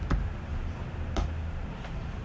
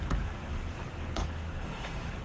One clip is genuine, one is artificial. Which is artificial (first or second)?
second